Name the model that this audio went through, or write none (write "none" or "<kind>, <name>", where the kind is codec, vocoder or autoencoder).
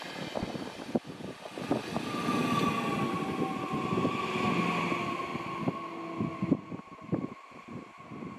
none